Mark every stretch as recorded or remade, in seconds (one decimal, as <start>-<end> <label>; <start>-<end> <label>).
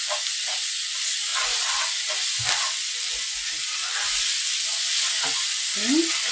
0.0-6.3 recorded